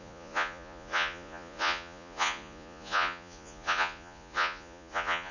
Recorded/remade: remade